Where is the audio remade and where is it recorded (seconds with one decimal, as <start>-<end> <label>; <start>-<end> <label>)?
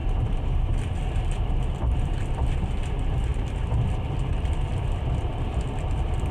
0.0-2.8 remade; 2.8-3.3 recorded; 3.3-4.3 remade; 4.3-4.7 recorded; 4.7-5.3 remade; 5.3-6.3 recorded